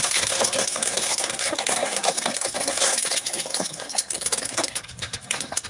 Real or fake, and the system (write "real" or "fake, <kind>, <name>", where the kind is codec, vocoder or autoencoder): fake, codec, SNAC